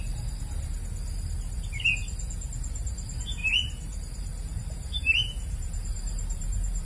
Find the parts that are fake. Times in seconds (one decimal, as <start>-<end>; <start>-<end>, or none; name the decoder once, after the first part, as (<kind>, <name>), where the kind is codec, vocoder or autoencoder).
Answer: 3.4-6.9 (vocoder, BigVGAN v2)